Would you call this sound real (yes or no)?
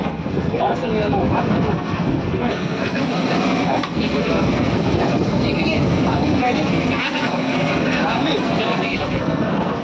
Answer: no